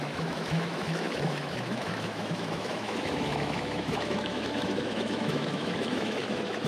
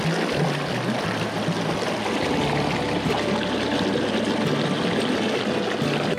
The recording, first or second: second